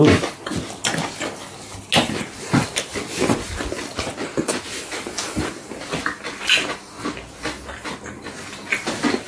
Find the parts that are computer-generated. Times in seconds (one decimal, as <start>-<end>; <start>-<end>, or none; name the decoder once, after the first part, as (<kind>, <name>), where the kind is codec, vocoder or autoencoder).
none